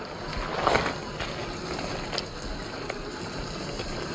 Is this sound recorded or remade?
recorded